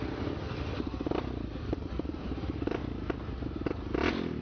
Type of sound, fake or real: real